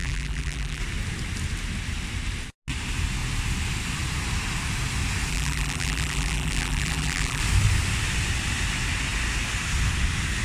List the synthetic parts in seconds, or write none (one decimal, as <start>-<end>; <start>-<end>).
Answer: 0.0-0.8; 5.3-7.4